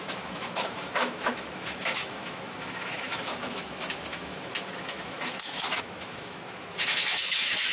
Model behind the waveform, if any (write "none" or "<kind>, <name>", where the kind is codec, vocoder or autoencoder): autoencoder, DAC-VAE